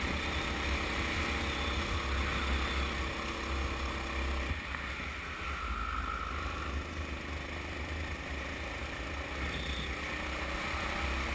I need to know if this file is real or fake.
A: real